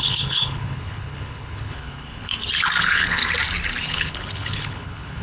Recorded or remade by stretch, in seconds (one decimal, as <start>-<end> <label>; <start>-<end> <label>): 0.0-2.3 remade; 2.3-2.8 recorded; 2.8-3.2 remade; 3.2-3.8 recorded; 3.8-5.2 remade